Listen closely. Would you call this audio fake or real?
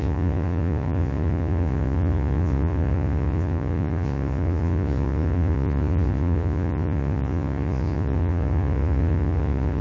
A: fake